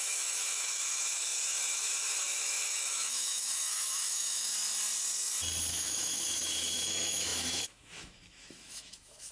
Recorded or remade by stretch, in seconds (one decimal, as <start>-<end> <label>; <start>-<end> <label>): 0.0-4.5 remade; 4.5-5.7 recorded; 5.7-9.3 remade